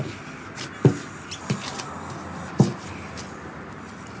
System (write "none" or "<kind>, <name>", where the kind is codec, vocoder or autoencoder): none